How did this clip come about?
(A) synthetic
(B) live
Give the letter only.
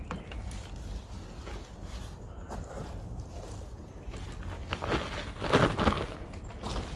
B